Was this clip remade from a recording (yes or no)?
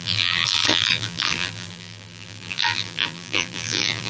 yes